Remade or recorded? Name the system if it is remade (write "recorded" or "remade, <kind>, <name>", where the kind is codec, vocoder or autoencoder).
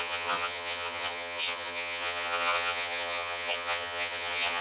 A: remade, vocoder, HiFi-GAN